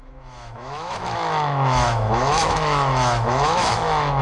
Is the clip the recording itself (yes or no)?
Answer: no